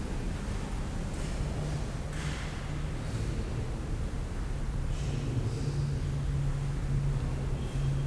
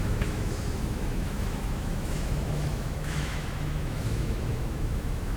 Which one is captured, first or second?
first